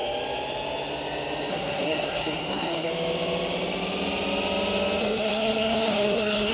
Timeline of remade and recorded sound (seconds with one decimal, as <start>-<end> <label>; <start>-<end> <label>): 0.0-1.5 recorded; 1.5-2.9 remade; 2.9-5.0 recorded; 5.0-6.5 remade